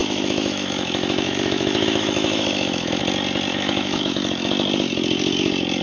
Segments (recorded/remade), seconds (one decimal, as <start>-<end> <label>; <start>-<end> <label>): 0.0-3.0 remade; 3.0-3.5 recorded; 3.5-4.5 remade; 4.5-5.8 recorded